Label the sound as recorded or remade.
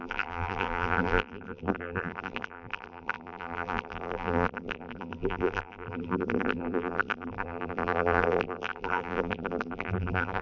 remade